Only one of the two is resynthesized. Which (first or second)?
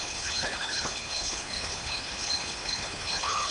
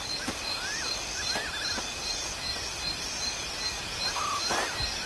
first